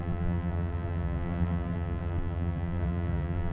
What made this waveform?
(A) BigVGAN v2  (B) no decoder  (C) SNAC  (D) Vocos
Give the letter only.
A